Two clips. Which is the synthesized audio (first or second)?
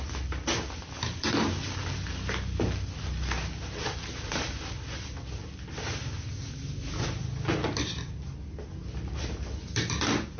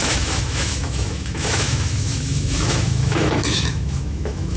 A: second